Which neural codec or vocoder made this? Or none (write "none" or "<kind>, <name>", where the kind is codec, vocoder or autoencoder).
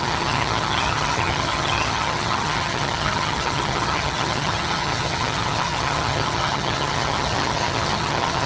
vocoder, HiFi-GAN